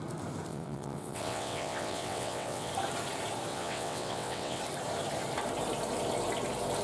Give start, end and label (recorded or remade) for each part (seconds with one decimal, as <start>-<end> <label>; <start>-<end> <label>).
0.0-0.5 recorded; 0.5-2.7 remade; 2.7-3.5 recorded; 3.5-4.6 remade; 4.6-6.8 recorded